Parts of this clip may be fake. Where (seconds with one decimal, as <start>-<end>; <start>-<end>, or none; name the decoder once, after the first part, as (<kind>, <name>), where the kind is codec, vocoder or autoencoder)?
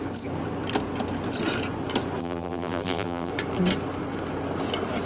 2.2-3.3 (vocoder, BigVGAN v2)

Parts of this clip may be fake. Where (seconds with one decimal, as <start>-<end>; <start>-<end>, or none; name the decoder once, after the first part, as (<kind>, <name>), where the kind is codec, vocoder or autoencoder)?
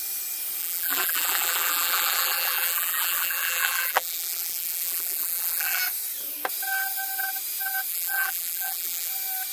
0.6-5.8 (vocoder, BigVGAN v2); 7.9-9.1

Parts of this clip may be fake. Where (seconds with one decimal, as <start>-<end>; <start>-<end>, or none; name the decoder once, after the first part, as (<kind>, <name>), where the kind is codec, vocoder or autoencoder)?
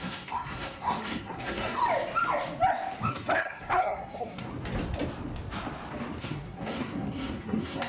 0.0-1.8 (codec, SNAC); 3.1-4.5; 6.2-7.9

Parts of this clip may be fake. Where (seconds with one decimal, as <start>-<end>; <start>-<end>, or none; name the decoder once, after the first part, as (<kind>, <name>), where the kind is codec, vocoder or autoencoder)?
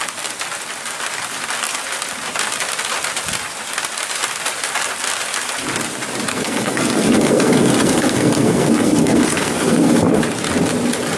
6.3-10.2 (codec, SNAC)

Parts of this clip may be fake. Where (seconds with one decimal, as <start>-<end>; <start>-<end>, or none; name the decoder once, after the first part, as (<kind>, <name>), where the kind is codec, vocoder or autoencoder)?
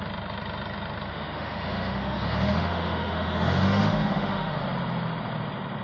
1.1-4.6 (autoencoder, DAC-VAE)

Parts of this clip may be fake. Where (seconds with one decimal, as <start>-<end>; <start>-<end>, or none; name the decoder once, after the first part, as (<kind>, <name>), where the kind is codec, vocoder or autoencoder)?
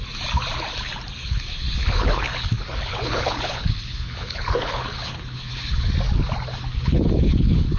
1.2-5.9 (codec, HILCodec); 6.7-7.8